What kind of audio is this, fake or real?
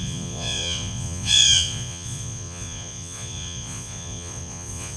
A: fake